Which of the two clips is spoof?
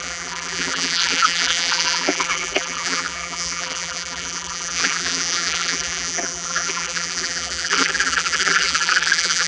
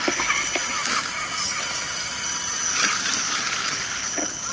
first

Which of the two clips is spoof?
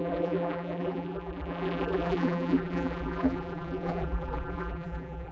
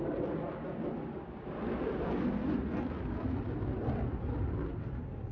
first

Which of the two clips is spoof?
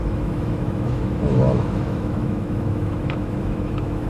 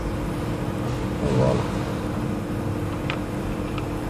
first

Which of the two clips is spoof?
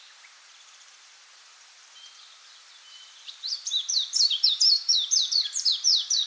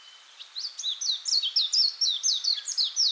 first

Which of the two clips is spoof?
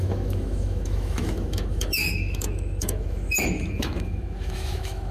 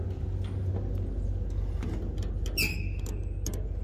first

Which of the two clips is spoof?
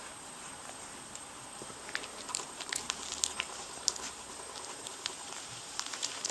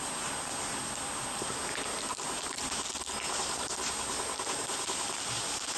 first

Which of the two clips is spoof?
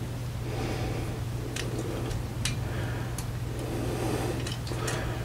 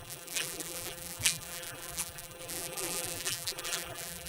second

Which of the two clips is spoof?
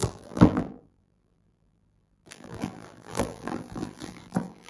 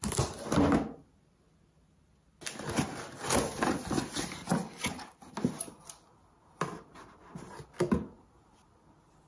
first